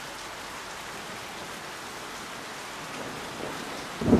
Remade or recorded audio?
recorded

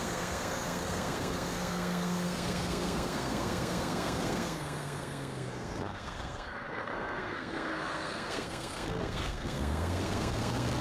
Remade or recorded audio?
remade